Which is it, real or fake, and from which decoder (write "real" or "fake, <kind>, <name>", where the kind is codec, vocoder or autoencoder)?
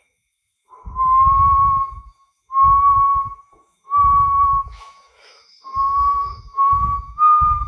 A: fake, autoencoder, DAC-VAE